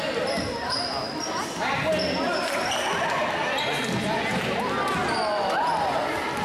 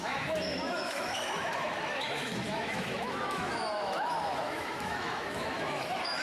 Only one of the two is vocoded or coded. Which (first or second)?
second